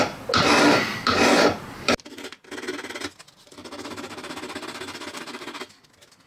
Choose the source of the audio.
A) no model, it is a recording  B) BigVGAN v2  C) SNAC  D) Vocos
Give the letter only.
A